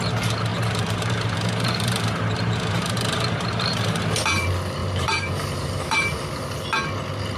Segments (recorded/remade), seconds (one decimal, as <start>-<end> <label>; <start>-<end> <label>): 0.0-0.5 recorded; 0.5-4.0 remade; 4.0-4.8 recorded; 4.8-6.2 remade; 6.2-7.4 recorded

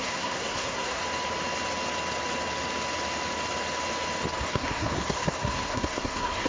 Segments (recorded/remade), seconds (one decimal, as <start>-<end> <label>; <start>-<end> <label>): 0.0-1.0 remade; 1.0-4.4 recorded; 4.4-6.5 remade

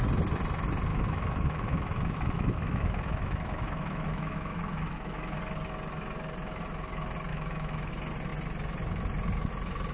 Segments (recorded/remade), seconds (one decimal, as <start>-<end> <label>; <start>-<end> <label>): 0.0-0.9 recorded; 0.9-5.4 remade; 5.4-7.3 recorded; 7.3-7.9 remade; 7.9-9.9 recorded

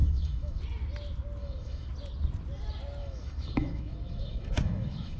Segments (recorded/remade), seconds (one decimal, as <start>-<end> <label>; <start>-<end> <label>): 0.0-0.6 remade; 0.6-1.4 recorded; 1.4-1.9 remade; 1.9-3.0 recorded; 3.0-5.2 remade

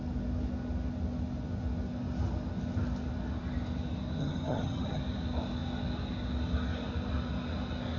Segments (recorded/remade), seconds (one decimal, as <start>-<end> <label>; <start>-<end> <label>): 0.0-4.2 recorded; 4.2-5.0 remade; 5.0-8.0 recorded

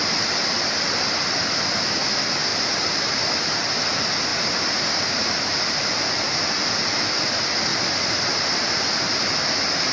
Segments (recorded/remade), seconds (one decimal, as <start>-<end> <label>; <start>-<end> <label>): 0.0-2.5 recorded; 2.5-3.3 remade; 3.3-4.3 recorded; 4.3-5.6 remade; 5.6-7.7 recorded; 7.7-8.7 remade; 8.7-9.9 recorded

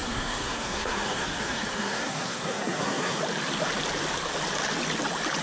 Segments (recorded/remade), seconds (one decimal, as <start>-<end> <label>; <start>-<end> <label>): 0.0-3.2 remade; 3.2-5.4 recorded